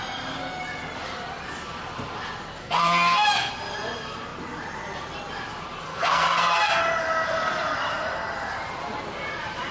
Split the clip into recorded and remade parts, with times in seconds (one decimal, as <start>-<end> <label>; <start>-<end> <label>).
0.0-2.6 recorded; 2.6-3.5 remade; 3.5-5.9 recorded; 5.9-6.8 remade; 6.8-9.7 recorded